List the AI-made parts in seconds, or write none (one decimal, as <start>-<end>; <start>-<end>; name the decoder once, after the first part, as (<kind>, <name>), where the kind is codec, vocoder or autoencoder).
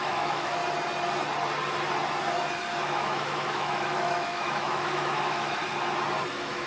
0.0-0.6 (autoencoder, DAC-VAE); 2.8-5.6; 6.3-6.7